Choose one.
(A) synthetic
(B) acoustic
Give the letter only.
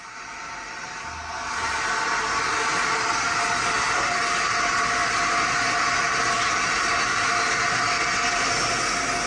B